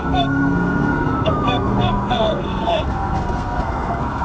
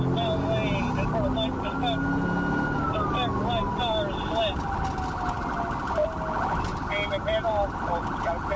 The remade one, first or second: first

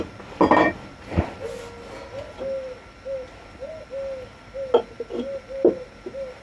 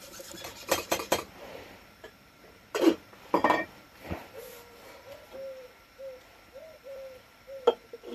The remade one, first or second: second